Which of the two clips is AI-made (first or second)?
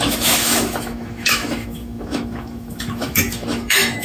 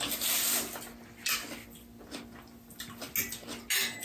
first